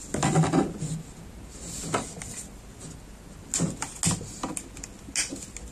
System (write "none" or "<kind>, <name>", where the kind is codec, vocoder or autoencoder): none